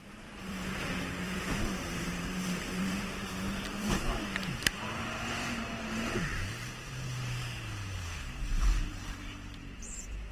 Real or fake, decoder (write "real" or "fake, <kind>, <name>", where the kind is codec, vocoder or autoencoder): fake, vocoder, BigVGAN v2